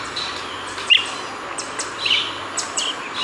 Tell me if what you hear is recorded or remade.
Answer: recorded